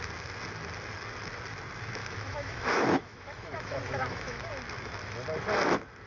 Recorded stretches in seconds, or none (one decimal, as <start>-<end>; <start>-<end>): 0.0-2.0; 4.5-6.1